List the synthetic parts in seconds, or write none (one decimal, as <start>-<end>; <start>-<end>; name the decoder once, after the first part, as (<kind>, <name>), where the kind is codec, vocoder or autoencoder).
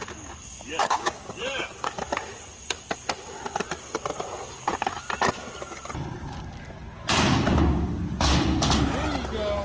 0.8-2.0 (codec, DAC)